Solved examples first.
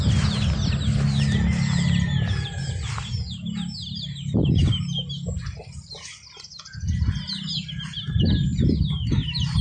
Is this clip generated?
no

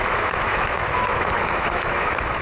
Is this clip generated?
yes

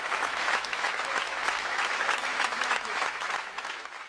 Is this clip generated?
yes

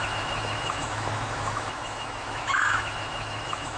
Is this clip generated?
yes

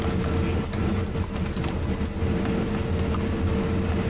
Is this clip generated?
no